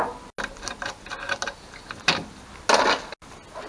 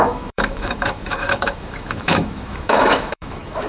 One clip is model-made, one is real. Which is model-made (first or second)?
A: second